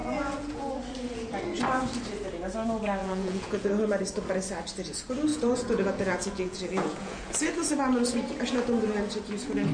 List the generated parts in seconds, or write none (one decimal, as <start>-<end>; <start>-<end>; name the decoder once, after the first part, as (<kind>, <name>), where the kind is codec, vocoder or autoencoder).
0.0-0.7 (vocoder, Vocos); 3.0-3.7; 5.3-7.7